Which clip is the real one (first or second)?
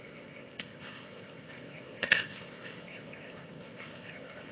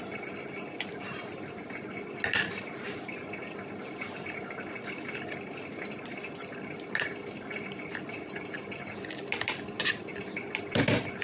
second